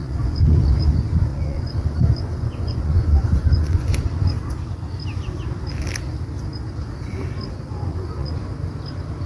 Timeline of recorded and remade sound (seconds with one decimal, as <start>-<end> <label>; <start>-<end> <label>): 0.0-0.9 remade; 0.9-1.3 recorded; 1.3-4.2 remade; 4.2-7.9 recorded; 7.9-8.4 remade; 8.4-9.3 recorded